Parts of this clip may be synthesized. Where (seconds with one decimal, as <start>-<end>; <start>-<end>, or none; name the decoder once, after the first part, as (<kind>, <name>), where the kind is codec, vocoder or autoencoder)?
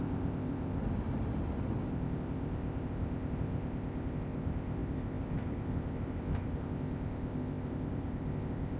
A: 0.0-0.8 (codec, ZipCodec); 1.9-8.8